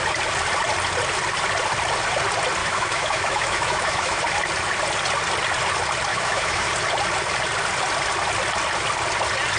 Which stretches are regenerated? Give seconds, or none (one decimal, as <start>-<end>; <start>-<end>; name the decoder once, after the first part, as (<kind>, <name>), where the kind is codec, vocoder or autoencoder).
2.6-4.2 (autoencoder, DAC-VAE); 6.1-6.7